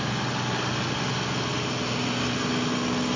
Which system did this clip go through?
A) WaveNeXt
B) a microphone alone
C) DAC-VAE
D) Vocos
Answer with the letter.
B